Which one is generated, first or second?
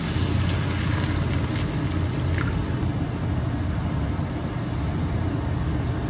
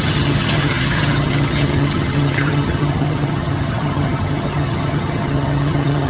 second